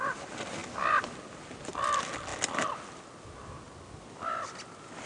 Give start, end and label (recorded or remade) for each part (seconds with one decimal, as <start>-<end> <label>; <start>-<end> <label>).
0.0-5.1 recorded